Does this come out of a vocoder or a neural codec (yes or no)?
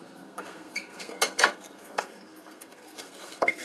yes